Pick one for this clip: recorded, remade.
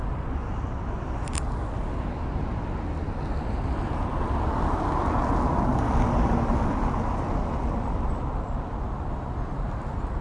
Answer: recorded